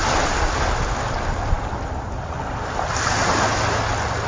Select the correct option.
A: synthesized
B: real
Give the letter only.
B